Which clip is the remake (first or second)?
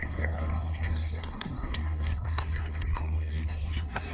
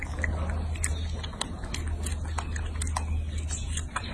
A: first